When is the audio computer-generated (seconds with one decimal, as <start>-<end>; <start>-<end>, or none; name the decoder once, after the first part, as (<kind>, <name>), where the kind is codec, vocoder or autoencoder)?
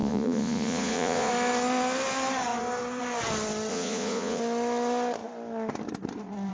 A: 0.0-1.3 (vocoder, Vocos); 3.7-4.4